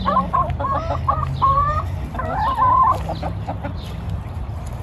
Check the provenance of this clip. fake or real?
real